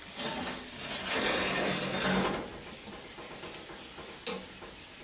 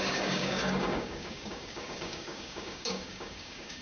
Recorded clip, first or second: first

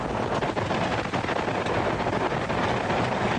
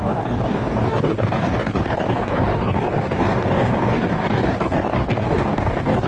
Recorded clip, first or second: first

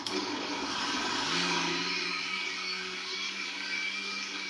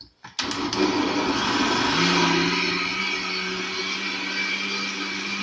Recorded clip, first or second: second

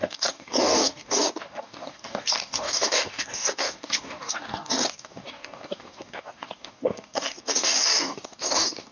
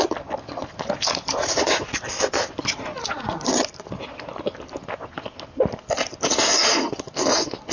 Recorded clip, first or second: second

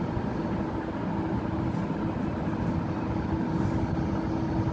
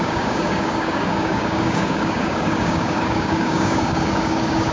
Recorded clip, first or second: first